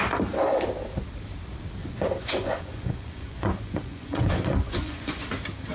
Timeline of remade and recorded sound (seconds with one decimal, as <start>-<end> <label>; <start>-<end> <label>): 0.0-1.8 recorded; 1.8-5.2 remade; 5.2-5.7 recorded